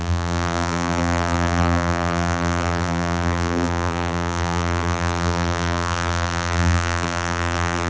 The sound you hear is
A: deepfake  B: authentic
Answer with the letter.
A